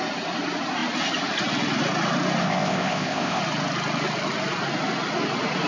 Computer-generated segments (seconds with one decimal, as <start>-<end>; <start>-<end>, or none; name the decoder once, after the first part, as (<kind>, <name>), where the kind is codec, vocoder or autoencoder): 2.4-3.4 (codec, ZipCodec)